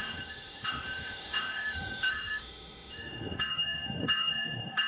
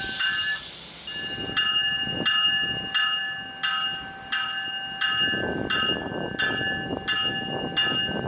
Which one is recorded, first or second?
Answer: second